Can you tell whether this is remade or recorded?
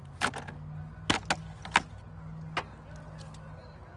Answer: recorded